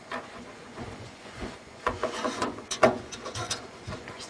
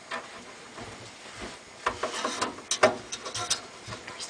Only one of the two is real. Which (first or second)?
second